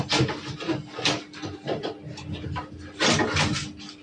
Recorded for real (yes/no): yes